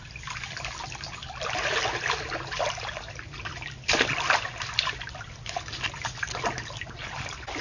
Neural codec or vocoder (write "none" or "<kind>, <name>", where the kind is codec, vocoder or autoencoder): none